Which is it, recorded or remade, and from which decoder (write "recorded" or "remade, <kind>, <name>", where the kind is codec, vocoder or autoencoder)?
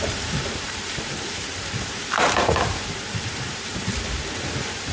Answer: remade, vocoder, BigVGAN v2